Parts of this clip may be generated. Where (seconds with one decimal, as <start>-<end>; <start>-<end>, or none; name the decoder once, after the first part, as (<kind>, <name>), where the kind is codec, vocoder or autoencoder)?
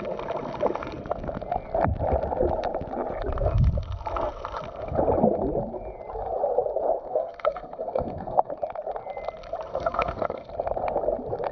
7.0-8.5 (codec, SNAC); 9.7-10.5